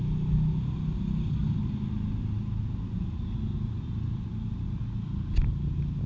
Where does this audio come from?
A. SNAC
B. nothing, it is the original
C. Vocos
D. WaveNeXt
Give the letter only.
B